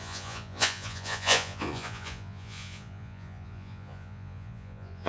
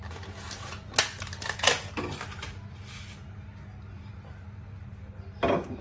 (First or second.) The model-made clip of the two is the first